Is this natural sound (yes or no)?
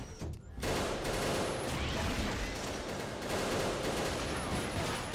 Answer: yes